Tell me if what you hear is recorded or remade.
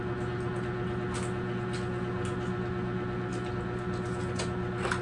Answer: recorded